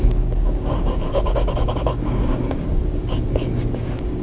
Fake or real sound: fake